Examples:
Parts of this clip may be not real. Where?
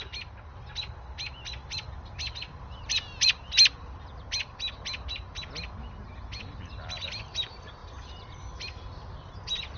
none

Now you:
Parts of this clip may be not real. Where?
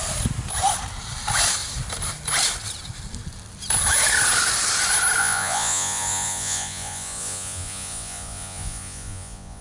5.2-9.6 (vocoder, Vocos)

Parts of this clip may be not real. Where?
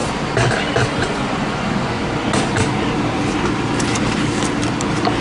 0.9-2.0 (vocoder, Vocos)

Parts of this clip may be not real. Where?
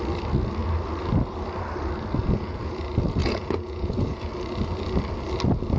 2.2-2.8 (vocoder, Vocos); 3.2-4.3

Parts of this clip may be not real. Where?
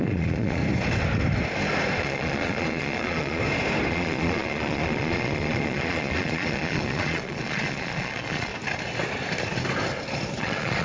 0.0-0.6 (vocoder, Vocos); 2.0-3.4; 3.9-8.5; 10.4-10.8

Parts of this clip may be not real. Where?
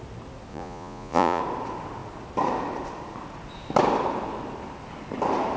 0.5-1.4 (vocoder, Vocos)